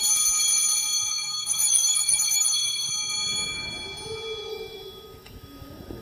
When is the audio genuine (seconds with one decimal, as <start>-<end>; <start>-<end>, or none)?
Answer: 0.0-1.1; 2.9-4.5